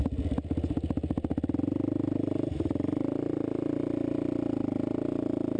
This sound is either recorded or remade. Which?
recorded